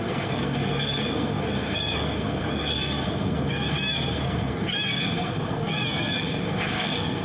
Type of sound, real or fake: fake